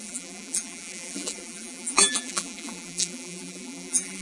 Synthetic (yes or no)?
yes